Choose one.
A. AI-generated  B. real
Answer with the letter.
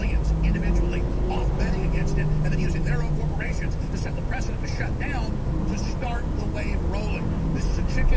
B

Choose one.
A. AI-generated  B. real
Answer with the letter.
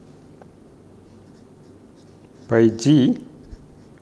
B